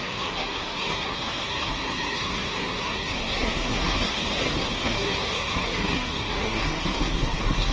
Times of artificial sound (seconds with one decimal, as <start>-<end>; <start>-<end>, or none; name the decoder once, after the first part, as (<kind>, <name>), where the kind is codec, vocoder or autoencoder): 0.0-7.7 (codec, SNAC)